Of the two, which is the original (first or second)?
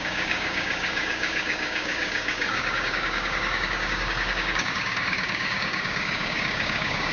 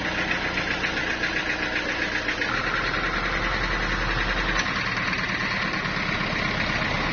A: second